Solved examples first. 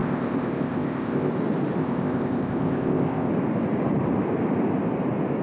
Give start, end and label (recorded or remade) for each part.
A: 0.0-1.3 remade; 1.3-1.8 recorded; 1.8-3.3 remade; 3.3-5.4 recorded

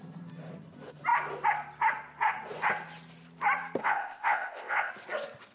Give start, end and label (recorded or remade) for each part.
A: 0.0-3.8 recorded; 3.8-4.9 remade; 4.9-5.5 recorded

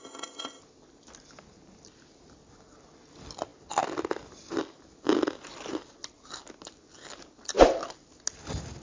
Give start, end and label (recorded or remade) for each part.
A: 0.0-0.6 remade; 0.6-8.8 recorded